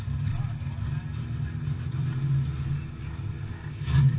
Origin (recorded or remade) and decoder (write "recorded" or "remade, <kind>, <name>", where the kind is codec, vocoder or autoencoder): recorded